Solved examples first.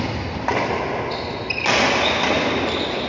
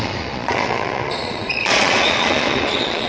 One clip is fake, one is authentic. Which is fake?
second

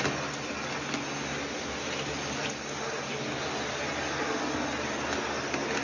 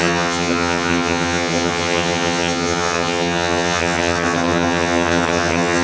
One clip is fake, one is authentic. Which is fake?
second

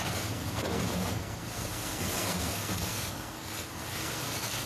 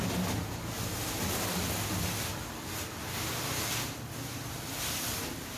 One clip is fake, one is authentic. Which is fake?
first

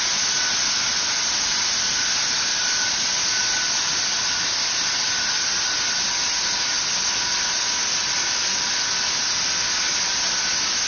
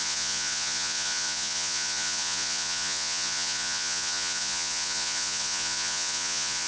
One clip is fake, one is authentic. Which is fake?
second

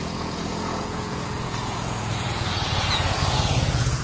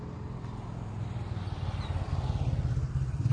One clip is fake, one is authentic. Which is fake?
first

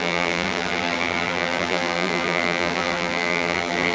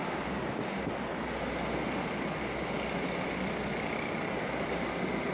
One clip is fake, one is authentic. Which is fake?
first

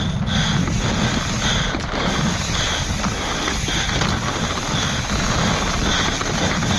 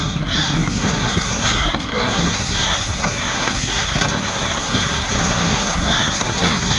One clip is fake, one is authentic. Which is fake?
second